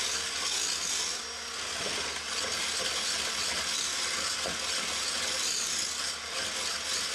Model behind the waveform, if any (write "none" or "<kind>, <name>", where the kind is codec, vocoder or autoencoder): none